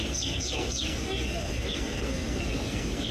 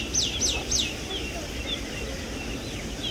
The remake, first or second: first